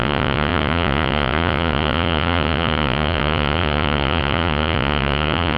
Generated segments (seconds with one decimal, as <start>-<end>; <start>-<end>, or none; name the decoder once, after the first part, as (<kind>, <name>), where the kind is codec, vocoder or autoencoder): 0.0-5.6 (vocoder, Vocos)